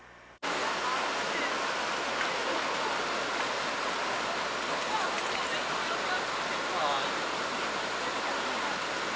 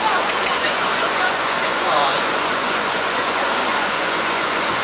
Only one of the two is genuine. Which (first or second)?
first